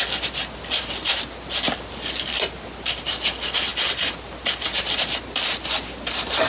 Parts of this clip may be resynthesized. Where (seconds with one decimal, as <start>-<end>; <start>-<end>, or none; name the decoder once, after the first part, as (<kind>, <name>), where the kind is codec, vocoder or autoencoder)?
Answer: none